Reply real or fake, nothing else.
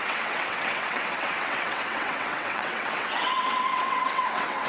fake